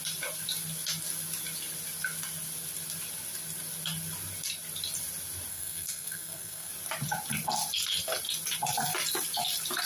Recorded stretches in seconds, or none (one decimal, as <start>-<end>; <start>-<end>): 0.0-5.5; 6.7-9.8